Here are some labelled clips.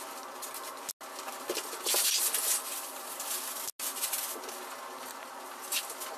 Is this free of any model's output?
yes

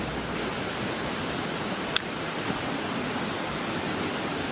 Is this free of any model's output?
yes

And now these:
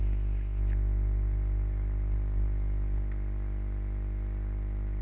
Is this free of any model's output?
yes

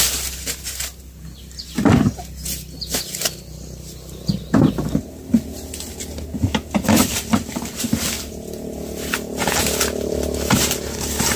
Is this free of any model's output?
yes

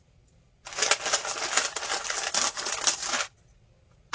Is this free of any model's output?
yes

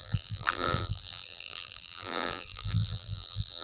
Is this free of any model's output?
no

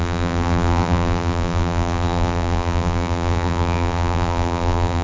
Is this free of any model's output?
no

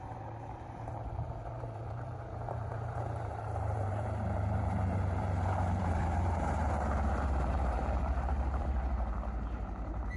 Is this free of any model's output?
no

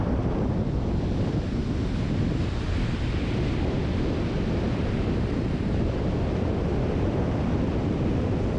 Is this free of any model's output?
no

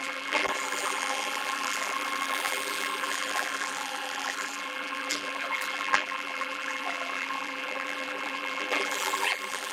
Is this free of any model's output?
no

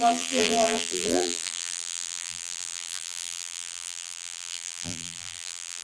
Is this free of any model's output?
no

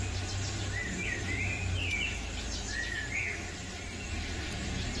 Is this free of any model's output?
yes